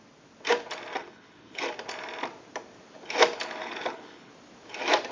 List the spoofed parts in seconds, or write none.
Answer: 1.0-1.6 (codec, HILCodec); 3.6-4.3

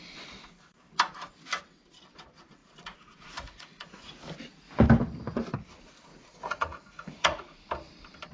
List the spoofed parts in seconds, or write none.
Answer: 2.6-4.2 (vocoder, Vocos); 6.1-7.6

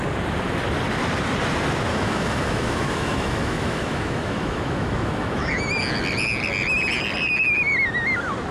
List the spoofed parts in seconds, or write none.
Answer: 1.9-5.6 (autoencoder, DAC-VAE)

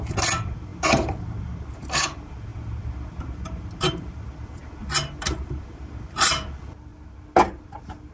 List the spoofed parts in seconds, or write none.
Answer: none

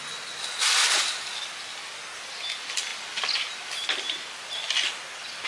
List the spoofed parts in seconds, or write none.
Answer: none

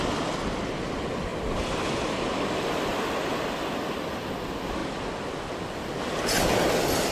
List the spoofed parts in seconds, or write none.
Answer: none

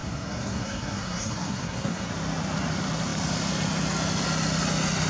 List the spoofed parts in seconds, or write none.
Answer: 0.0-2.1 (codec, SNAC)

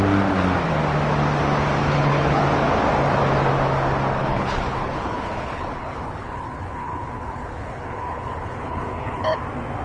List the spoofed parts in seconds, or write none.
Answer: 1.8-2.4 (codec, HILCodec); 4.2-9.4